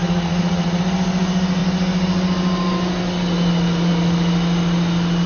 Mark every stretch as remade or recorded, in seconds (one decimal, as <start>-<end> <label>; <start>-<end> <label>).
0.0-0.8 remade; 0.8-5.3 recorded